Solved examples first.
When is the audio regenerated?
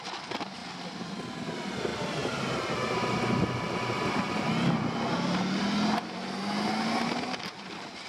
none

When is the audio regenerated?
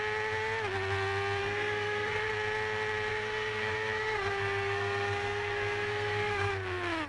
1.4-2.3; 3.1-6.5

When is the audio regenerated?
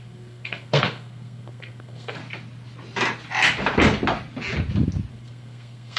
0.0-2.2; 5.1-6.0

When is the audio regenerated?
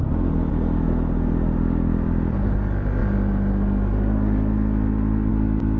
none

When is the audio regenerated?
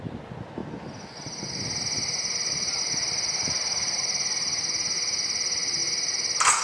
none